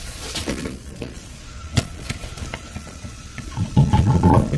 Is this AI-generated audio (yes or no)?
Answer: yes